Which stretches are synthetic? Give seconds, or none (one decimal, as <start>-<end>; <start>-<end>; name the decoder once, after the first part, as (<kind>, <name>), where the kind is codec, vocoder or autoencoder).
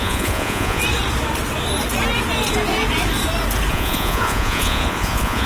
0.0-0.8 (vocoder, Vocos); 3.7-5.5